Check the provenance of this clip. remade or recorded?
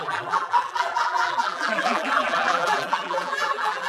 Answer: remade